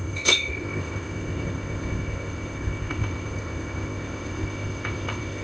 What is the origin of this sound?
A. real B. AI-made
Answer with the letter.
B